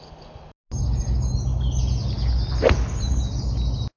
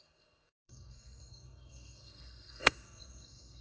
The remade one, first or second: second